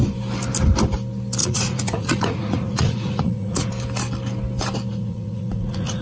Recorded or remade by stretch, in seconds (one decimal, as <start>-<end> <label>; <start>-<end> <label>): 0.0-1.4 recorded; 1.4-3.7 remade; 3.7-4.9 recorded; 4.9-6.0 remade